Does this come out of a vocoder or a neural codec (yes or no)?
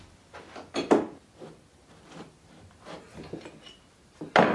no